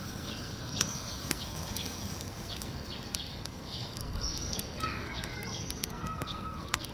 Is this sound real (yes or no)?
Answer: no